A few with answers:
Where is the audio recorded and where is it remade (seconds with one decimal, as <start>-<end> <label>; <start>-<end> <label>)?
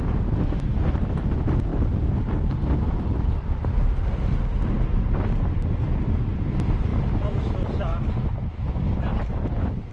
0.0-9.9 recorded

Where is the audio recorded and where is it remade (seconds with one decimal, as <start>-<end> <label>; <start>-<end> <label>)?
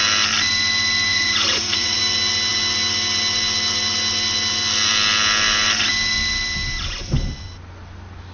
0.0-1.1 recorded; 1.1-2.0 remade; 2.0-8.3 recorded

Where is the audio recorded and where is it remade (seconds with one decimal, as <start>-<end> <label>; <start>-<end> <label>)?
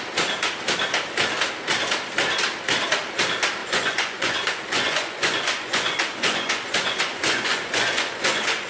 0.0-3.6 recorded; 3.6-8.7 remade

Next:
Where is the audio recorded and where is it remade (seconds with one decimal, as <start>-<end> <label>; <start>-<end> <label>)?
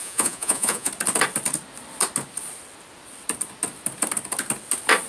0.0-0.9 remade; 0.9-5.1 recorded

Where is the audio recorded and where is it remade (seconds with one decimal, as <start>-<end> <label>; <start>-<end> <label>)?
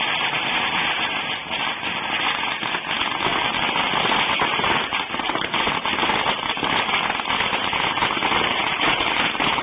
0.0-9.6 recorded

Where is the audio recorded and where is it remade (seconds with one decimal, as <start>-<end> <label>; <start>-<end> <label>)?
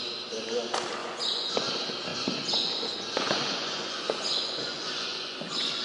0.0-1.0 recorded; 1.0-1.7 remade; 1.7-2.1 recorded; 2.1-5.8 remade